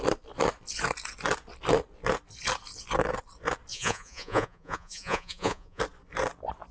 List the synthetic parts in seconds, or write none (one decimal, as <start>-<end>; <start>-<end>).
3.7-5.8